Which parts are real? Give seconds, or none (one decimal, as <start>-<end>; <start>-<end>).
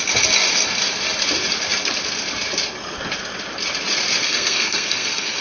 0.0-4.2